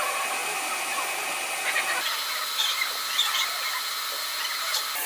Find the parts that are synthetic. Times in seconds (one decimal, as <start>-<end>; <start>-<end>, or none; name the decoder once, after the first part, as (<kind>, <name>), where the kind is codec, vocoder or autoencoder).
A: none